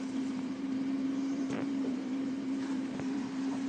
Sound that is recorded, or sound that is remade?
remade